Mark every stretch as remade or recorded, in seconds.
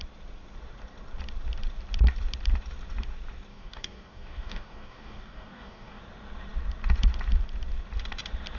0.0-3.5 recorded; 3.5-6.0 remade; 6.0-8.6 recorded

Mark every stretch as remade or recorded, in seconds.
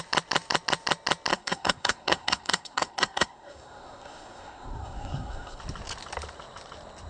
0.0-1.3 recorded; 1.3-5.6 remade; 5.6-7.1 recorded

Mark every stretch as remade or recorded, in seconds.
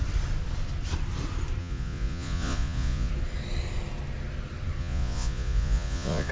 0.0-1.6 recorded; 1.6-3.1 remade; 3.1-4.8 recorded; 4.8-6.3 remade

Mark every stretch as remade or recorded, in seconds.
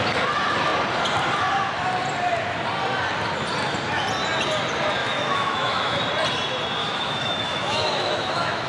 0.0-5.0 recorded; 5.0-6.1 remade; 6.1-6.8 recorded; 6.8-8.7 remade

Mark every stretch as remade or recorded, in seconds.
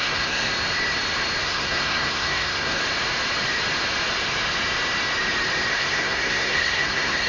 0.0-0.5 remade; 0.5-1.4 recorded; 1.4-2.8 remade; 2.8-5.7 recorded; 5.7-7.3 remade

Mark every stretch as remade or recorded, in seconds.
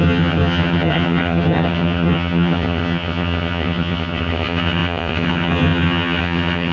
0.0-6.7 remade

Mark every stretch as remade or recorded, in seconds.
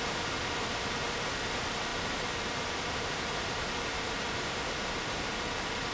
0.0-1.9 recorded; 1.9-5.4 remade; 5.4-5.9 recorded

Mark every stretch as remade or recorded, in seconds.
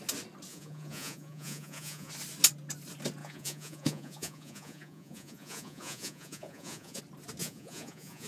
0.0-0.5 recorded; 0.5-2.1 remade; 2.1-3.2 recorded; 3.2-7.0 remade; 7.0-7.4 recorded; 7.4-8.3 remade